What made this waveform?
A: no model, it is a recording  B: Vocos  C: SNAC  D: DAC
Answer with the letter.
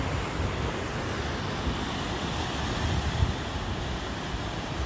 A